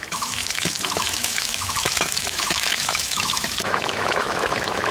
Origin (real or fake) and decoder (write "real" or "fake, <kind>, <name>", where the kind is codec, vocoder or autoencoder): fake, autoencoder, DAC-VAE